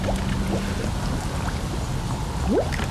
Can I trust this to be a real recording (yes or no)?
yes